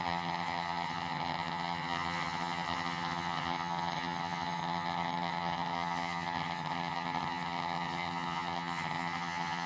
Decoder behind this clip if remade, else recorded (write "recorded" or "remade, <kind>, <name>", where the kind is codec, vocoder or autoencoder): remade, vocoder, HiFi-GAN